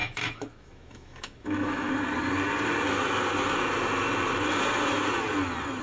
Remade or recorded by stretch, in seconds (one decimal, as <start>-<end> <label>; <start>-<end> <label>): 0.0-1.9 remade; 1.9-5.8 recorded